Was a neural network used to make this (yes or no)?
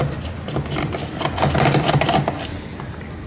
no